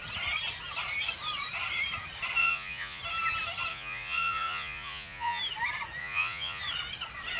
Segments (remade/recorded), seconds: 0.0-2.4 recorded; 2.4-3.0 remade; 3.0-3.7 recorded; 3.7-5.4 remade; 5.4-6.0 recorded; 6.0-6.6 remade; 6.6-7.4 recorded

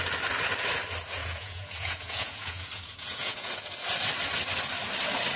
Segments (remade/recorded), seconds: 0.0-1.2 recorded; 1.2-3.5 remade; 3.5-5.4 recorded